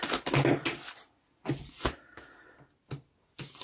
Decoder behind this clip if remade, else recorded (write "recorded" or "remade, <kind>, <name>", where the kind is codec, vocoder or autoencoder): recorded